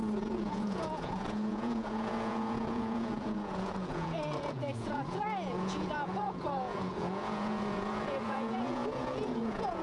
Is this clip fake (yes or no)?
yes